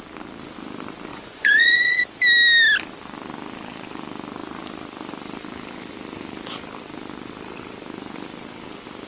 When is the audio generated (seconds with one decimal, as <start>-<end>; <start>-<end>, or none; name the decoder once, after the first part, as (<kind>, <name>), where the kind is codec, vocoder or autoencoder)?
1.1-2.0 (vocoder, Vocos)